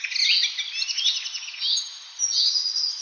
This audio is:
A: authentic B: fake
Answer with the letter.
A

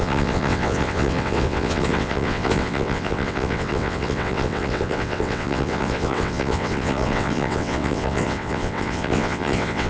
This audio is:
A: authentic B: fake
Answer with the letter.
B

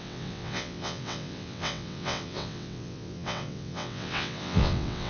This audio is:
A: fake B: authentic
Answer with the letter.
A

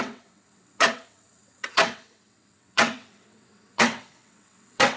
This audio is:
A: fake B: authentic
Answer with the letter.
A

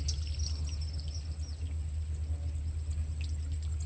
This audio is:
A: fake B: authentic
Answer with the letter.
B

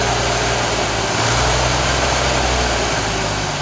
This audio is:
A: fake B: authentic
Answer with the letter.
B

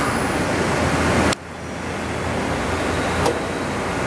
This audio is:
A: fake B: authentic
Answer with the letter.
B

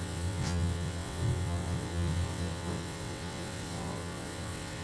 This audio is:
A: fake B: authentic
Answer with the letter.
A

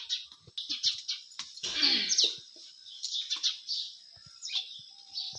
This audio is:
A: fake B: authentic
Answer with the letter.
B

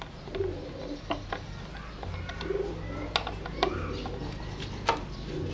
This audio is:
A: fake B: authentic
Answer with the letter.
B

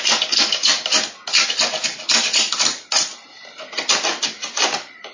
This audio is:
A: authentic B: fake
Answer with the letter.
A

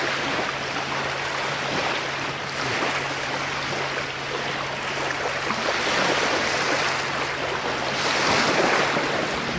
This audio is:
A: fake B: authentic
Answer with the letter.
B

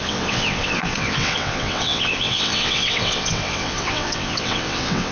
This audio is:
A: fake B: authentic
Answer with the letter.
A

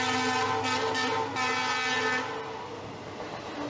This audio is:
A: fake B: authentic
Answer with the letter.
B